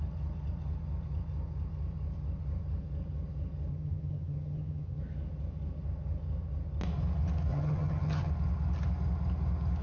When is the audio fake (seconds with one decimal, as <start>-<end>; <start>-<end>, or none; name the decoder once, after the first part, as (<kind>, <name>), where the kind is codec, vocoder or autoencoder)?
3.7-5.0 (vocoder, HiFi-GAN); 7.5-8.3